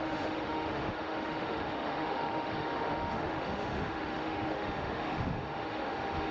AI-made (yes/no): yes